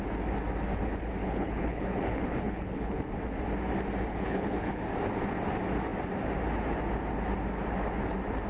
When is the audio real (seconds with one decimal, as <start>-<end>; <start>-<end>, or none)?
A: 0.0-1.2; 3.1-4.1; 4.8-8.5